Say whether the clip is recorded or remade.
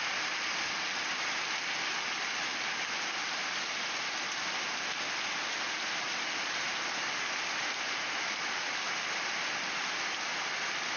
recorded